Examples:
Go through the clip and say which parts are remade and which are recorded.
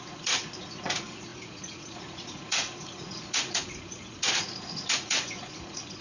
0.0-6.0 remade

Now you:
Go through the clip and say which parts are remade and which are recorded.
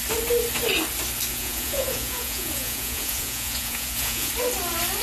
0.0-1.3 recorded; 1.3-4.3 remade; 4.3-5.0 recorded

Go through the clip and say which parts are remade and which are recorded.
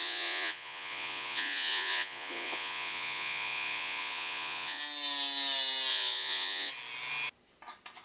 0.0-4.8 remade; 4.8-5.9 recorded; 5.9-6.7 remade; 6.7-8.0 recorded